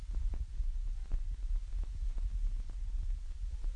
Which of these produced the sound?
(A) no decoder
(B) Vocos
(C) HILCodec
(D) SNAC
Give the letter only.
A